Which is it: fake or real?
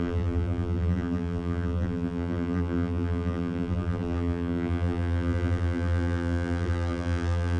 fake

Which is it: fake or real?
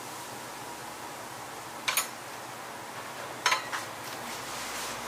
real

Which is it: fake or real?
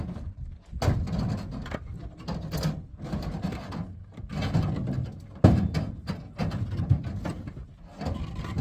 real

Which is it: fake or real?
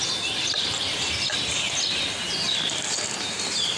real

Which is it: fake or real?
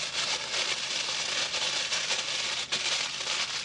real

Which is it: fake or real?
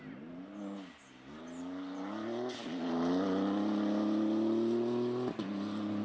real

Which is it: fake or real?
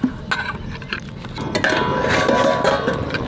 real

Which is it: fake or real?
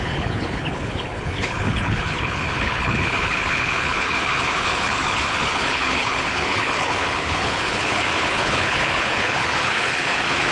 fake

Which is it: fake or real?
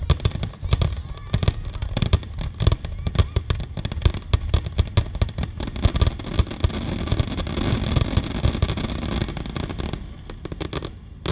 real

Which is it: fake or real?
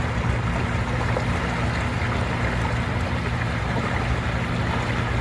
real